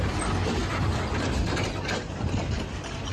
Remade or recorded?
recorded